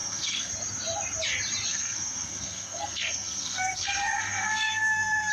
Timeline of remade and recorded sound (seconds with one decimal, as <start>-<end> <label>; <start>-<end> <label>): 0.0-0.5 remade; 0.5-1.7 recorded; 1.7-5.3 remade